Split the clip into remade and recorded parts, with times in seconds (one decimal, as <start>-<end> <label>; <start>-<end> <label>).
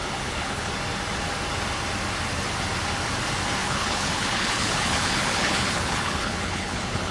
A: 0.0-0.7 remade; 0.7-3.6 recorded; 3.6-7.1 remade